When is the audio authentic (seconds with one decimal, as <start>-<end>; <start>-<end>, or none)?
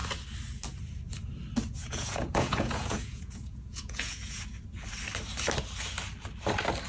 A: 0.0-1.8; 4.4-6.9